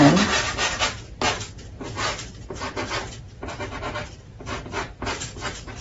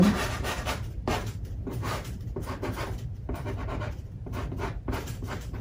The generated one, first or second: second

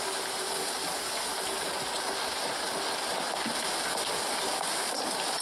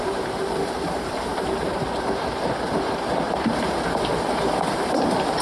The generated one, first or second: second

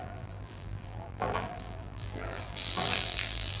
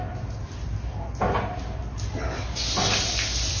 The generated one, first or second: first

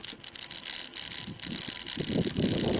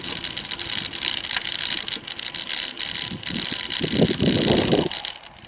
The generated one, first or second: second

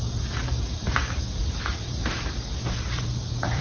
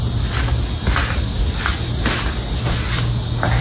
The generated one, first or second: first